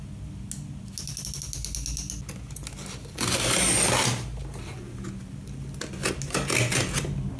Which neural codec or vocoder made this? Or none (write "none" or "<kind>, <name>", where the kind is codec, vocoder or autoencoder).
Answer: none